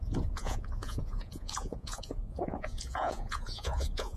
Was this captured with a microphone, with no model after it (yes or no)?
no